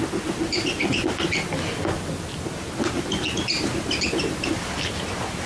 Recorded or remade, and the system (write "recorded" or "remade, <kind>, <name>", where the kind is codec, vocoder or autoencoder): recorded